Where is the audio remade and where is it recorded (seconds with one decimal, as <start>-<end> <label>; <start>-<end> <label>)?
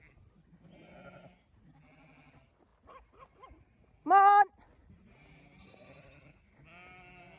0.0-7.4 recorded